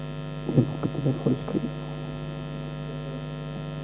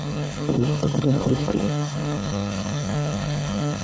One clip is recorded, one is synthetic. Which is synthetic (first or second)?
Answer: second